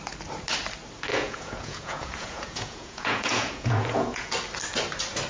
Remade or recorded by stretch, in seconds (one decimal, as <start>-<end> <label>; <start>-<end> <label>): 0.0-1.1 recorded; 1.1-4.3 remade; 4.3-5.3 recorded